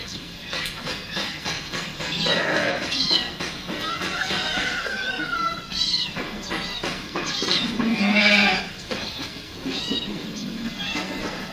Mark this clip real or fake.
fake